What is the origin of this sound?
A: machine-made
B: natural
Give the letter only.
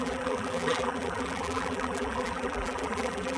A